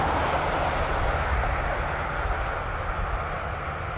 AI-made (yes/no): no